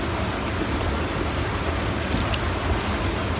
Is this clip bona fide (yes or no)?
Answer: yes